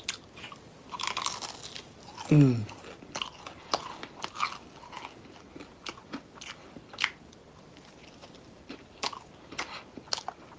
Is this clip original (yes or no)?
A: yes